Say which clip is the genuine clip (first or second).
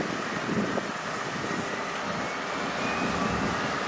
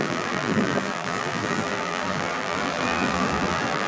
first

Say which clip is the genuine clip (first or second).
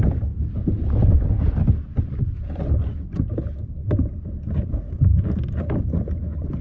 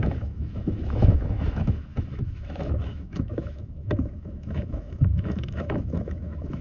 first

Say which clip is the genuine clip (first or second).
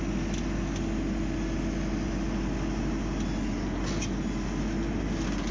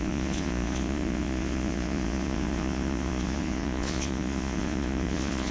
first